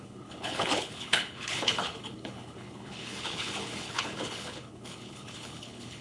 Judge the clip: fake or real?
fake